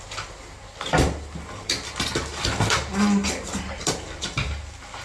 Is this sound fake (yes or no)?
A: no